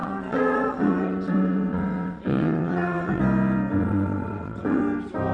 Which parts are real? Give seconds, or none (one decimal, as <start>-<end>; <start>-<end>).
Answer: 3.2-3.8; 4.8-5.3